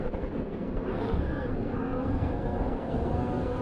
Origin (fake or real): fake